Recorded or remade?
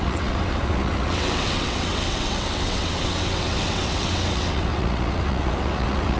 remade